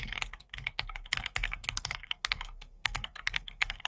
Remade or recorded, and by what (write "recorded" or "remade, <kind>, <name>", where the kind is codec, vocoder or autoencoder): remade, codec, SNAC